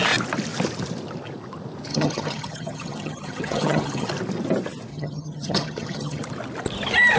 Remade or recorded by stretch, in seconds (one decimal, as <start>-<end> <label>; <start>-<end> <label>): 0.0-1.9 recorded; 1.9-4.1 remade; 4.1-4.9 recorded; 4.9-6.2 remade; 6.2-7.2 recorded